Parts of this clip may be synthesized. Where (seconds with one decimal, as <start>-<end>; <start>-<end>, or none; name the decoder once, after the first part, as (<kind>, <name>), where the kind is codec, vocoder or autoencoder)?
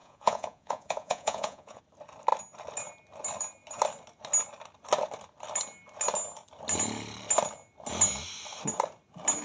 0.0-1.8 (vocoder, Vocos)